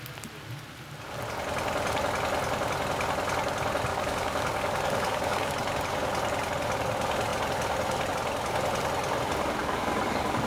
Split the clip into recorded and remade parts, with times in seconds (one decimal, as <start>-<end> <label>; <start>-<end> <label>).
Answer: 0.0-3.9 recorded; 3.9-5.5 remade; 5.5-9.6 recorded; 9.6-10.5 remade